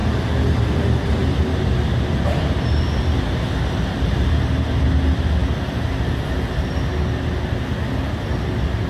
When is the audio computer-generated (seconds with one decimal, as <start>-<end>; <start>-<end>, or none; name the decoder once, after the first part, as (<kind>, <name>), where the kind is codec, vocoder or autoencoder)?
none